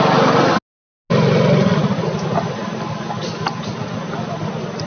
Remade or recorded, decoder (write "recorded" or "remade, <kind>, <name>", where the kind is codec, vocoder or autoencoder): recorded